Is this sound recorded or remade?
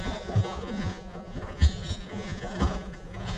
remade